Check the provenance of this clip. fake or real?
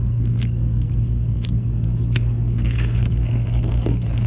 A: fake